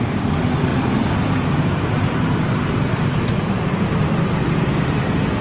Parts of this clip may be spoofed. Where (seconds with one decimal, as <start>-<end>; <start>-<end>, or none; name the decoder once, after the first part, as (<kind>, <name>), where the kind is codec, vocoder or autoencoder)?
0.7-3.6 (vocoder, BigVGAN v2)